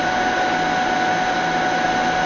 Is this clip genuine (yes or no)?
yes